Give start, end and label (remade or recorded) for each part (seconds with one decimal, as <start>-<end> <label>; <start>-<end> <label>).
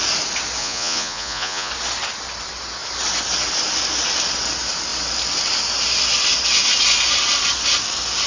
0.0-0.6 recorded; 0.6-1.7 remade; 1.7-8.3 recorded